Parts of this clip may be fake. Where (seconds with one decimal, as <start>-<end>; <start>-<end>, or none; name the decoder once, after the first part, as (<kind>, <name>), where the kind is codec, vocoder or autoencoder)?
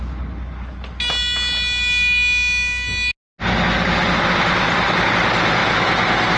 none